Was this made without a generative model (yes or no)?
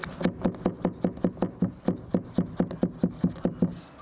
yes